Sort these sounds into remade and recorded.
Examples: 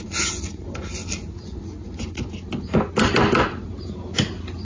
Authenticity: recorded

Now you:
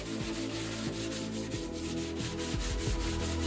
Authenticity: recorded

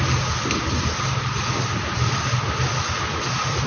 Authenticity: recorded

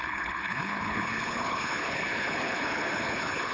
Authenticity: remade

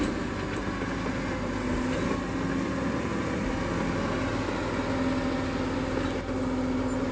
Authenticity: recorded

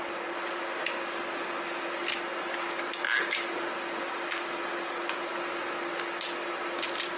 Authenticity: recorded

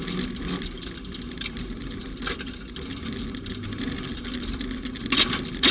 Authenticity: recorded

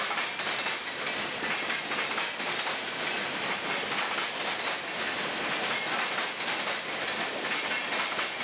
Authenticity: recorded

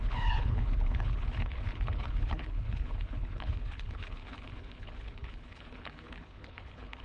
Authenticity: remade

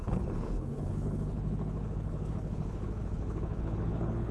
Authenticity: remade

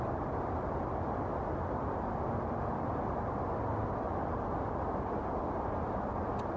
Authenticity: recorded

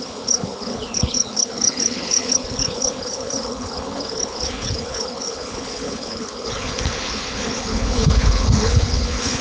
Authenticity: remade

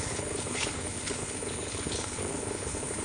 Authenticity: remade